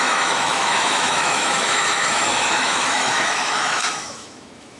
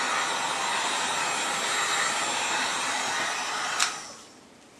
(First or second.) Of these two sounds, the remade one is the first